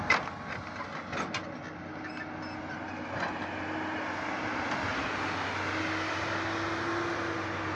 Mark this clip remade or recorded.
recorded